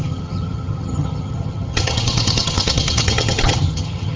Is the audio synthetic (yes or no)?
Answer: yes